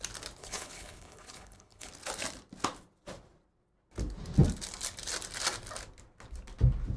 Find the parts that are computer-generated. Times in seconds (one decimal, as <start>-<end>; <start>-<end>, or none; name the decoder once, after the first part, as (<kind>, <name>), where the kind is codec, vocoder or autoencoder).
0.4-1.9 (codec, HILCodec)